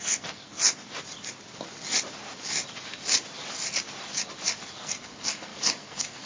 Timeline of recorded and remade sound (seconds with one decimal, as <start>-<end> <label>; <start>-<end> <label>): 0.0-0.9 remade; 0.9-4.7 recorded; 4.7-6.3 remade